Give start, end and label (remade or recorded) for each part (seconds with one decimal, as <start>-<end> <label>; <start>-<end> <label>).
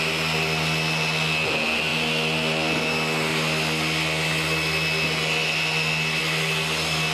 0.0-7.1 recorded